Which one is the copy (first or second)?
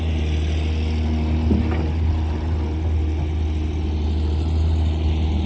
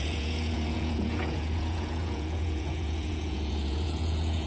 second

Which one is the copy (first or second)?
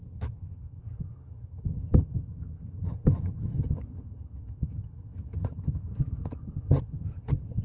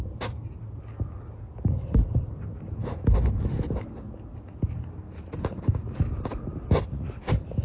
first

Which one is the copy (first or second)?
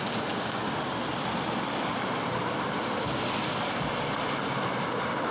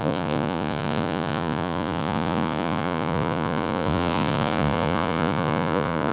second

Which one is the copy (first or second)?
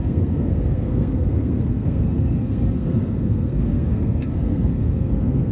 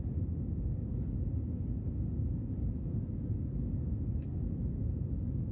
first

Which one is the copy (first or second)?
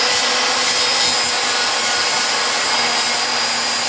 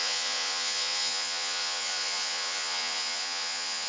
second